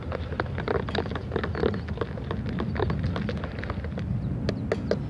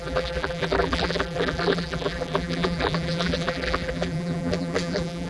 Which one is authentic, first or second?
first